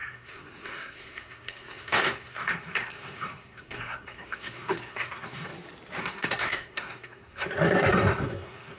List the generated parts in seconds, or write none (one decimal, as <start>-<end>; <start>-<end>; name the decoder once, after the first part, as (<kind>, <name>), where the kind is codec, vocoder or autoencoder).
0.0-5.5 (codec, SNAC); 6.0-8.8